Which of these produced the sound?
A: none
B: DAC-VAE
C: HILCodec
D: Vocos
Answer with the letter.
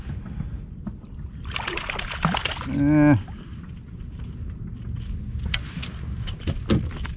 A